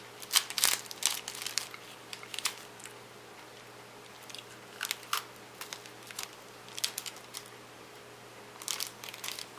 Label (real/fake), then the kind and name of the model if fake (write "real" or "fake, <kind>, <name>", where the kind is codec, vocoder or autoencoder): real